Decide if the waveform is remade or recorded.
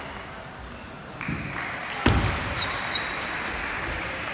recorded